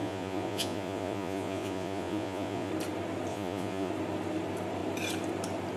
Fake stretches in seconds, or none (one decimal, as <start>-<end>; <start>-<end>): 0.0-2.7; 3.3-3.9